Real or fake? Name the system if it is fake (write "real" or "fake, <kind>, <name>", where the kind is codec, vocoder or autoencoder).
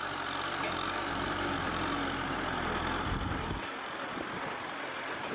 real